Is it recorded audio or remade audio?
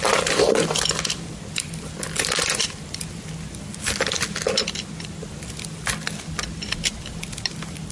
recorded